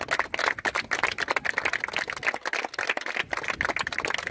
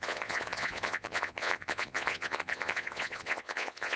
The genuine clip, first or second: first